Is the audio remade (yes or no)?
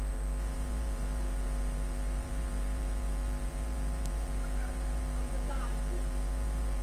yes